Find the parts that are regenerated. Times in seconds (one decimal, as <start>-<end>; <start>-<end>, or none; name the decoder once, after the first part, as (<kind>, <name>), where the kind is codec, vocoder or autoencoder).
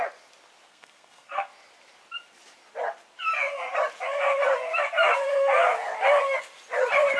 0.7-1.5 (codec, SNAC)